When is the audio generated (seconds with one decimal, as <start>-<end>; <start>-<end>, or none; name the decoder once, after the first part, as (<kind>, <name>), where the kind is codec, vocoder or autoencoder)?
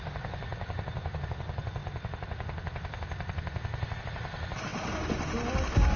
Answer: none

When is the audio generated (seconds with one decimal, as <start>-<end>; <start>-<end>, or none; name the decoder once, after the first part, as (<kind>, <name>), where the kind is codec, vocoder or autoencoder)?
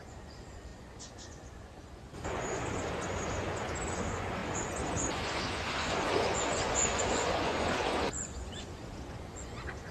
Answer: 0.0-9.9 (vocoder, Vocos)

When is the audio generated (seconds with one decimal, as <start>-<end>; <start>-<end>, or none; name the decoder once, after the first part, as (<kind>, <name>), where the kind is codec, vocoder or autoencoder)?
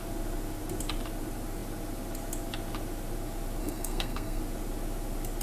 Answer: 3.6-4.4 (codec, SNAC)